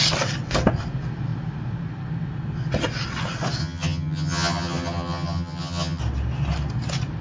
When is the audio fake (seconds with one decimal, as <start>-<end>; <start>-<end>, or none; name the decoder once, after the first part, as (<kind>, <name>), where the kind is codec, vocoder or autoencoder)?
3.6-6.0 (vocoder, HiFi-GAN)